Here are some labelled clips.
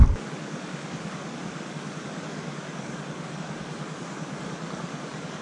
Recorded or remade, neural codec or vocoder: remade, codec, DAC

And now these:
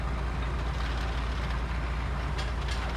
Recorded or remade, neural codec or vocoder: recorded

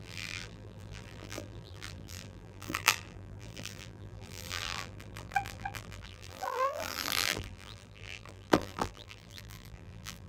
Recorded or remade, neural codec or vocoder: remade, vocoder, BigVGAN v2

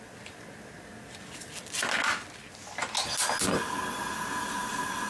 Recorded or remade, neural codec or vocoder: recorded